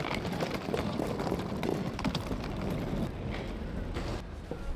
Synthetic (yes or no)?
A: no